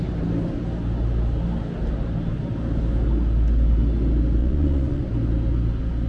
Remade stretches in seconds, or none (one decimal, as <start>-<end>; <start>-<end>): 4.4-5.1